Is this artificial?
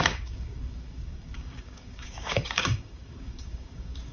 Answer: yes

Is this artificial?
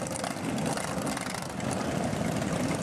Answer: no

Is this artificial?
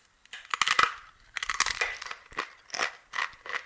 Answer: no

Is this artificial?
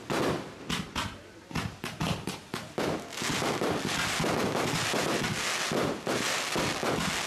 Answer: no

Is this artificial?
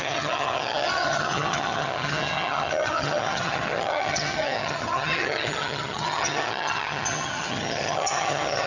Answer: yes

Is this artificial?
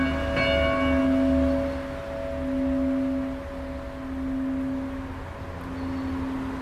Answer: no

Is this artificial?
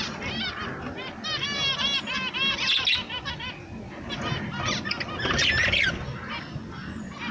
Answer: no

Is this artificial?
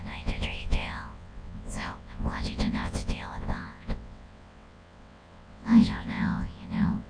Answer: yes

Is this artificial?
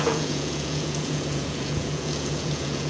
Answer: yes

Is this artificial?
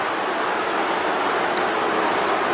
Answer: no